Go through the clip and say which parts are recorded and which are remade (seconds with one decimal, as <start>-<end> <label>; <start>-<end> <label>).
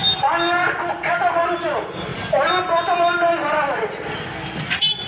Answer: 0.0-5.1 recorded